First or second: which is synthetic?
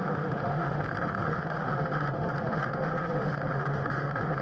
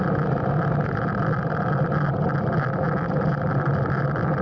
first